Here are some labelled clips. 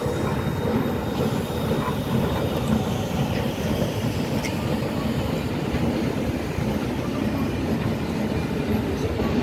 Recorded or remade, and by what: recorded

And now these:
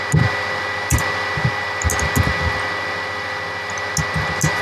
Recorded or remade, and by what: recorded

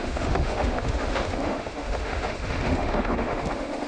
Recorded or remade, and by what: remade, autoencoder, DAC-VAE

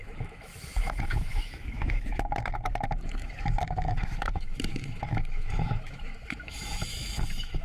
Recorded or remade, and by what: remade, autoencoder, DAC-VAE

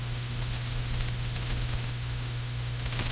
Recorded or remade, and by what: remade, autoencoder, DAC-VAE